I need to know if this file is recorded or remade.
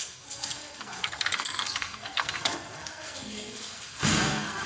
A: remade